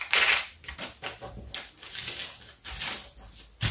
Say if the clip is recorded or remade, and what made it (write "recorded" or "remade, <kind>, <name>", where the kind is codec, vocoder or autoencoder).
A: recorded